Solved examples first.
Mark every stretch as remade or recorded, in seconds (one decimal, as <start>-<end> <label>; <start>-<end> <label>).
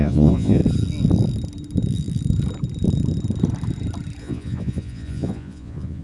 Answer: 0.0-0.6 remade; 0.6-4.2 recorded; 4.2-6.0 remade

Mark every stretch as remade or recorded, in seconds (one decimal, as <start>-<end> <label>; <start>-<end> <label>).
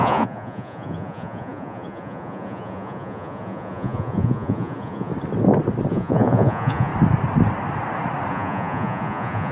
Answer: 0.0-5.1 remade; 5.1-5.9 recorded; 5.9-6.9 remade; 6.9-8.3 recorded; 8.3-9.5 remade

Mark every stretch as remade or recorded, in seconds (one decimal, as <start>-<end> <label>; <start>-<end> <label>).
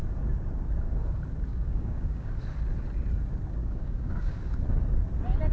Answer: 0.0-1.5 recorded; 1.5-2.3 remade; 2.3-3.6 recorded; 3.6-4.4 remade; 4.4-5.5 recorded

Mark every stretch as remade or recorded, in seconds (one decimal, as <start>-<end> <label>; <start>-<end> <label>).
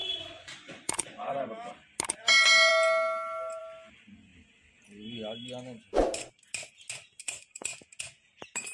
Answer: 0.0-1.5 remade; 1.5-7.2 recorded; 7.2-7.7 remade; 7.7-8.7 recorded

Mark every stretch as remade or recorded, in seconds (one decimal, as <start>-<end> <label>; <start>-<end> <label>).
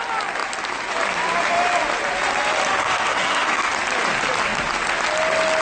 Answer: 0.0-2.8 recorded; 2.8-3.7 remade; 3.7-5.6 recorded